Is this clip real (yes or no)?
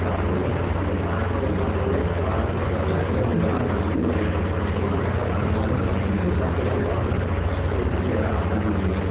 yes